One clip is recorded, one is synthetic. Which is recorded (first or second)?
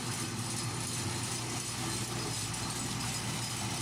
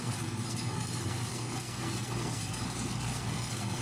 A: first